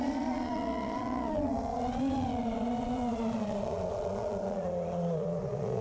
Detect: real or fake fake